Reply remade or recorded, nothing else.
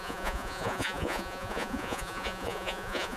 remade